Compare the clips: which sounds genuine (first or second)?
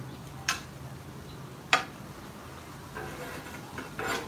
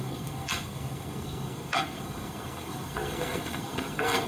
first